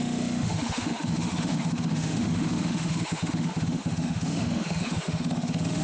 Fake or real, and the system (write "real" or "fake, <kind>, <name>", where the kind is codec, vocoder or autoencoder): fake, autoencoder, DAC-VAE